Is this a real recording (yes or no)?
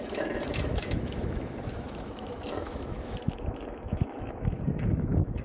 no